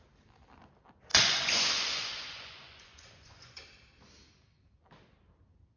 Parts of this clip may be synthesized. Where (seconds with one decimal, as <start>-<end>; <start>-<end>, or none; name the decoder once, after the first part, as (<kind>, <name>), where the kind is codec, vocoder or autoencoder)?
1.1-3.6 (vocoder, Vocos)